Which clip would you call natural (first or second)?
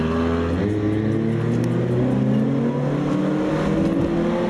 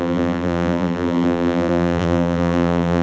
first